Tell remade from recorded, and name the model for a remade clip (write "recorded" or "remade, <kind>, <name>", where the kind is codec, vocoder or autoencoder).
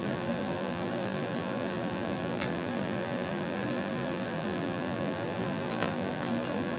remade, vocoder, BigVGAN v2